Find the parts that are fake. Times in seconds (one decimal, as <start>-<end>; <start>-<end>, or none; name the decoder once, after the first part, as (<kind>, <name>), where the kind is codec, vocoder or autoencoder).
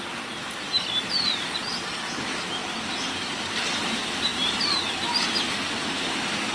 none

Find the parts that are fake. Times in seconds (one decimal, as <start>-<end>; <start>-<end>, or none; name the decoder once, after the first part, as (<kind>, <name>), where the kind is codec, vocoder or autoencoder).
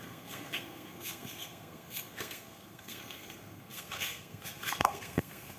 0.0-5.6 (codec, SNAC)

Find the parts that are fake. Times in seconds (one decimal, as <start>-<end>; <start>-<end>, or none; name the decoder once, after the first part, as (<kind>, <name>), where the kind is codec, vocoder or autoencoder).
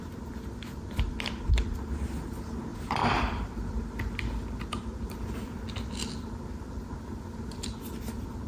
2.7-3.8 (vocoder, BigVGAN v2)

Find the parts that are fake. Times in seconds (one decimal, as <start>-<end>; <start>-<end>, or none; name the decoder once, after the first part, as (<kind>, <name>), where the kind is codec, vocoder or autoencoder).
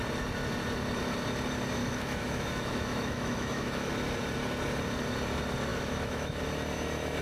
1.8-3.9 (autoencoder, DAC-VAE); 5.7-6.4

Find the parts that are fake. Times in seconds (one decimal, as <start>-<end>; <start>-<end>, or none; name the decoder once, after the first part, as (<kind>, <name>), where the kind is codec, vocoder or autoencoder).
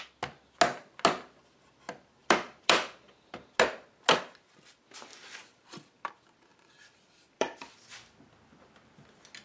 2.2-3.5 (vocoder, BigVGAN v2); 5.1-6.1; 6.5-9.4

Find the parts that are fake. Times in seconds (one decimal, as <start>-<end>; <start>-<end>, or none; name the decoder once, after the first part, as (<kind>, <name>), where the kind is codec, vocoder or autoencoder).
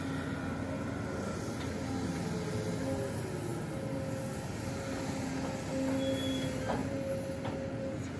none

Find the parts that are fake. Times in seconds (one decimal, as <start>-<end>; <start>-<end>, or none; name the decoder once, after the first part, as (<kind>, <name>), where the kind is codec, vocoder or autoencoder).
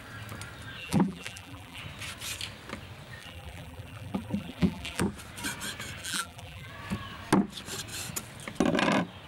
0.8-1.8 (vocoder, BigVGAN v2); 3.2-5.0; 6.0-6.7